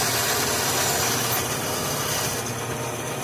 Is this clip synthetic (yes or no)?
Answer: no